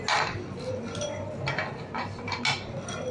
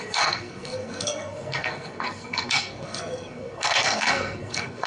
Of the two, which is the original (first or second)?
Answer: first